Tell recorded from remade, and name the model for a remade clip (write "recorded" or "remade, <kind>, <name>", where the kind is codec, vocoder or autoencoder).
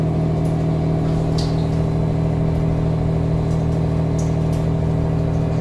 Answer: recorded